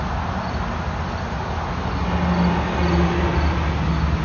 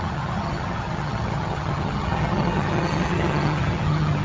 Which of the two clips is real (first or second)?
first